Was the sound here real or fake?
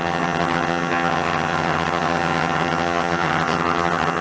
fake